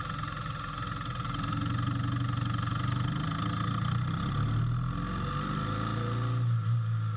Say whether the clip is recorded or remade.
recorded